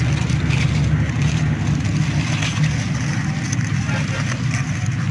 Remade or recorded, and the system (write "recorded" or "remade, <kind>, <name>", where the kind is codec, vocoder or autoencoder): recorded